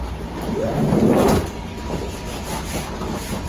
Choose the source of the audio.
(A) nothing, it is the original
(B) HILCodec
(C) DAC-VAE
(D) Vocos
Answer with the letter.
A